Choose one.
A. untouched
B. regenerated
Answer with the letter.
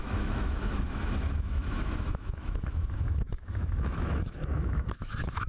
B